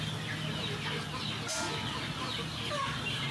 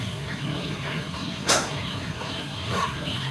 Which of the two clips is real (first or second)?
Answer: first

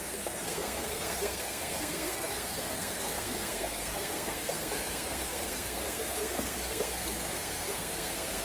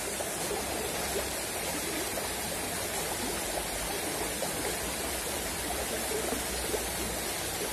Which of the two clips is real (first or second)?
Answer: second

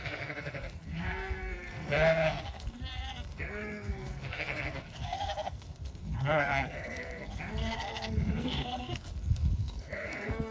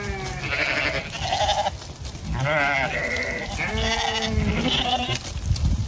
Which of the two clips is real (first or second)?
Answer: second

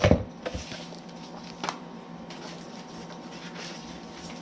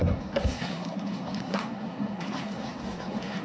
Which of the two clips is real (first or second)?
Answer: first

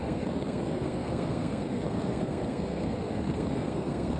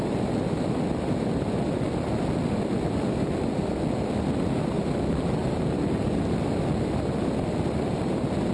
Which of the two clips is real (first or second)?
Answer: second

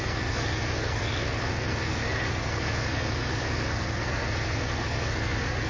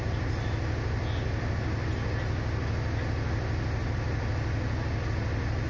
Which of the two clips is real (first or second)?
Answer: second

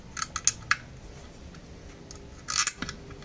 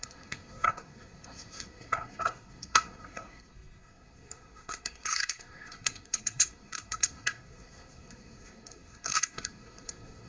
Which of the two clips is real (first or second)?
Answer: first